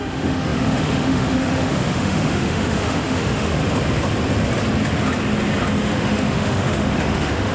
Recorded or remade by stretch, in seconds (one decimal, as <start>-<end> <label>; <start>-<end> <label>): 0.0-3.6 remade; 3.6-5.7 recorded; 5.7-7.5 remade